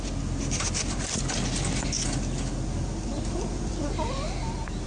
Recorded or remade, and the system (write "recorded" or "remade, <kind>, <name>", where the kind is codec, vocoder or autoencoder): recorded